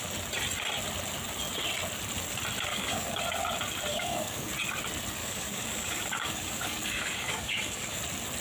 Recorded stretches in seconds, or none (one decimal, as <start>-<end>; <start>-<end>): 0.0-2.7; 3.2-3.9; 4.5-5.2; 8.0-8.4